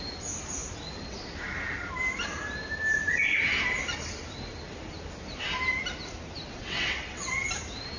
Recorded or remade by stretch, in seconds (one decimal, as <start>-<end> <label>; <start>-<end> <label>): 0.0-6.5 recorded; 6.5-7.5 remade; 7.5-8.0 recorded